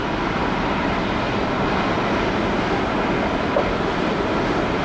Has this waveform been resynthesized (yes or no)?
no